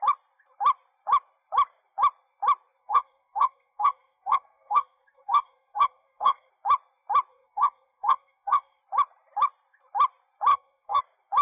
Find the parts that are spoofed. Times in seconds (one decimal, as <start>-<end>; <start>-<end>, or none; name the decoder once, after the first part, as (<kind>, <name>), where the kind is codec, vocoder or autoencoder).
2.8-6.5 (codec, SNAC); 7.3-8.8; 10.5-11.0